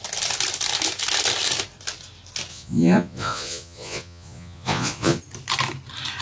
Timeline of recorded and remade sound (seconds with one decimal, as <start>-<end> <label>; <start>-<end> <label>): 0.0-2.5 recorded; 2.5-5.2 remade; 5.2-6.2 recorded